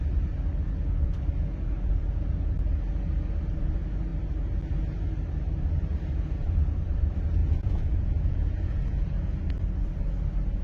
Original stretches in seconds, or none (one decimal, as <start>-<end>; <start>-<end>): 0.0-7.4; 9.4-10.6